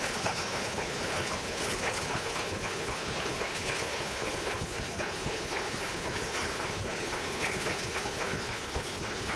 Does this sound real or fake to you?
fake